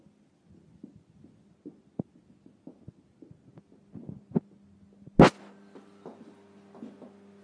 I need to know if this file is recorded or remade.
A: recorded